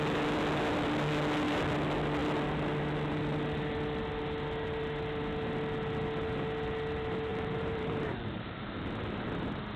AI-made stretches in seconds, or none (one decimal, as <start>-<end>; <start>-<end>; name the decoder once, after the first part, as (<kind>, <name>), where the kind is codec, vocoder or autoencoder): 7.3-9.2 (vocoder, BigVGAN v2)